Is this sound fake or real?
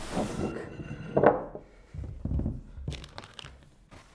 real